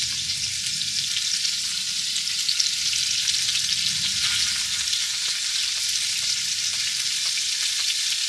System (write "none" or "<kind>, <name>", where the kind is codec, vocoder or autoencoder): none